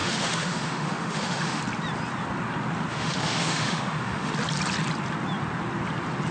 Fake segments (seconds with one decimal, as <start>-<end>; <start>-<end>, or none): 0.0-1.6; 2.9-4.3